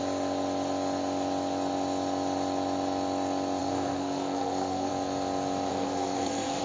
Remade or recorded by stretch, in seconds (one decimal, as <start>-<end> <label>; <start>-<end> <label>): 0.0-3.6 recorded; 3.6-4.9 remade; 4.9-5.7 recorded; 5.7-6.6 remade